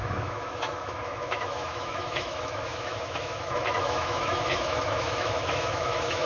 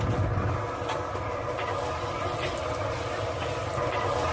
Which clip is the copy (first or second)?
first